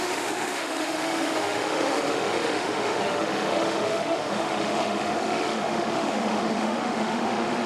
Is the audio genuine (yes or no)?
no